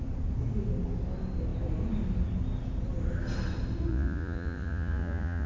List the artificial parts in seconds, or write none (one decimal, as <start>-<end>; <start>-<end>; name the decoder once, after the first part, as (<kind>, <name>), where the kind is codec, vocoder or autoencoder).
3.9-5.5 (vocoder, Vocos)